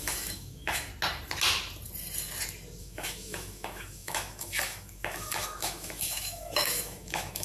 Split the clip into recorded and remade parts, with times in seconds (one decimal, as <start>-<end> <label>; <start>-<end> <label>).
0.0-0.9 remade; 0.9-2.8 recorded; 2.8-7.4 remade